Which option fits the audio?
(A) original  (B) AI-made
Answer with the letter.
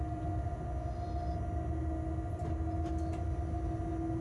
A